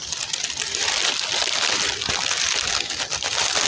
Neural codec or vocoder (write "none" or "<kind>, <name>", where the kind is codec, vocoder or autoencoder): none